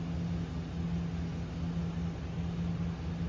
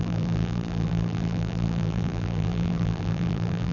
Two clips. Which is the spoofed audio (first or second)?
second